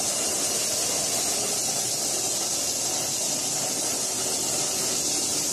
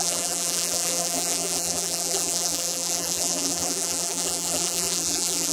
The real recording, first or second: first